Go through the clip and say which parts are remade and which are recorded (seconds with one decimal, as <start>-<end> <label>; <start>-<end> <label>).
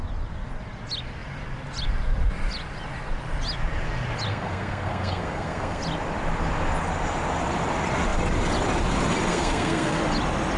0.0-4.3 recorded; 4.3-5.8 remade; 5.8-9.3 recorded; 9.3-10.0 remade; 10.0-10.6 recorded